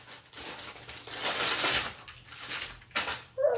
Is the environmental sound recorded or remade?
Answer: recorded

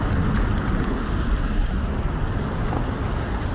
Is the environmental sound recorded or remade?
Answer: recorded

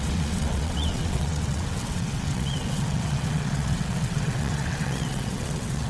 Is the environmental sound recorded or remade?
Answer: remade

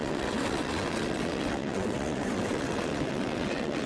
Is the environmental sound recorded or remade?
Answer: remade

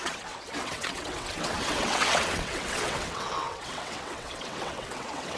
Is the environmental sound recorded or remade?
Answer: remade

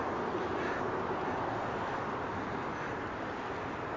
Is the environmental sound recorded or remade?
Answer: recorded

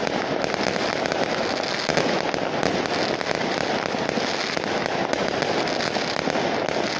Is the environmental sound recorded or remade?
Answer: recorded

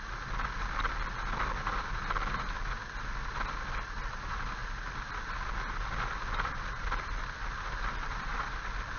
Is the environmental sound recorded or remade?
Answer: recorded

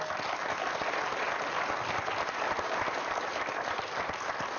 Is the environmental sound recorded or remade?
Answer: recorded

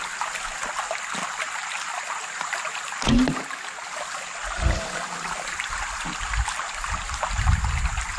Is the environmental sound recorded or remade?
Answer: recorded